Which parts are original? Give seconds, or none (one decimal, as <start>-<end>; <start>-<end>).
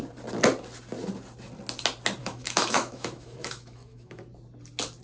0.0-2.2; 4.2-5.0